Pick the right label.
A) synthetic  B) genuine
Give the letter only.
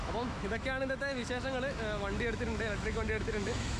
A